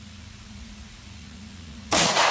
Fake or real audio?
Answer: fake